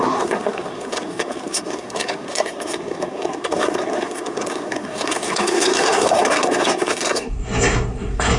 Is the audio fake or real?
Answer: fake